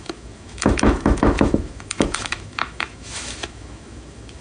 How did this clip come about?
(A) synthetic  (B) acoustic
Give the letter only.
A